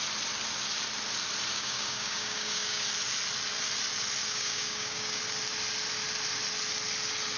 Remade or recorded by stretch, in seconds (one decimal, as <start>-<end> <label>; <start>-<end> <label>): 0.0-1.5 recorded; 1.5-2.8 remade; 2.8-4.2 recorded; 4.2-5.2 remade; 5.2-7.4 recorded